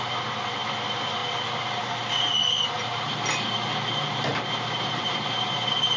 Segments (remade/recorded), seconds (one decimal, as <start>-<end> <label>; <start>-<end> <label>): 0.0-1.2 recorded; 1.2-1.9 remade; 1.9-2.4 recorded; 2.4-3.1 remade; 3.1-4.3 recorded; 4.3-6.0 remade